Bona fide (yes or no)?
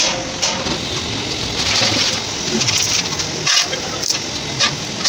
yes